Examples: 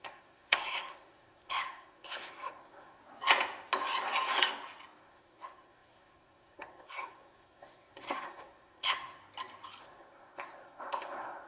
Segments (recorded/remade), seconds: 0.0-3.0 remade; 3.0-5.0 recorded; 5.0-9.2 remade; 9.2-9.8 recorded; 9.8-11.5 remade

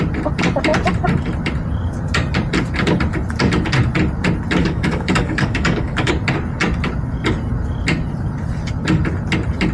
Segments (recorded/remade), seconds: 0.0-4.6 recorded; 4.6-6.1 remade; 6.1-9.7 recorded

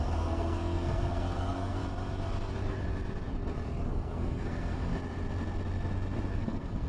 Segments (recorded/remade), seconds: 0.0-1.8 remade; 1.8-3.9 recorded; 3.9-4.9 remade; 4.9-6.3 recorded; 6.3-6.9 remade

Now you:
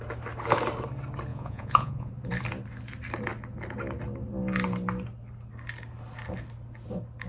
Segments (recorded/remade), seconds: 0.0-1.3 recorded; 1.3-2.1 remade; 2.1-7.3 recorded